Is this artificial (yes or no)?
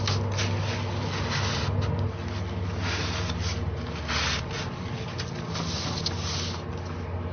no